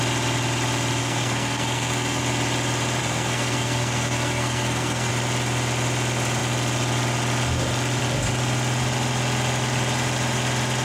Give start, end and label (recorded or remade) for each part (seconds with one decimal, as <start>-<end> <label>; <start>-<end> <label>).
0.0-1.0 recorded; 1.0-2.2 remade; 2.2-3.0 recorded; 3.0-5.1 remade; 5.1-10.8 recorded